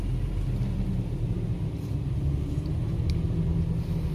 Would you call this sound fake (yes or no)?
no